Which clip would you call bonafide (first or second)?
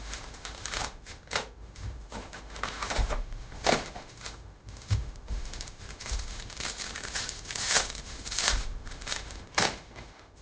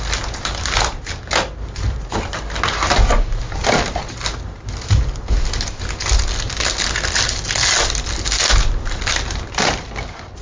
second